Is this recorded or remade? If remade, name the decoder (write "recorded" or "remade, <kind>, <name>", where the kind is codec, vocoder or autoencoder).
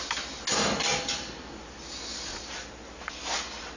recorded